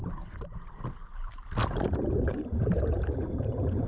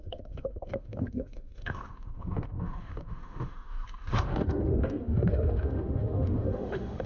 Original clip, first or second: first